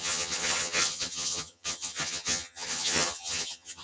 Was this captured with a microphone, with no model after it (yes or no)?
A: no